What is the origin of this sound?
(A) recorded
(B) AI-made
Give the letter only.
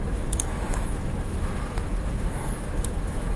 B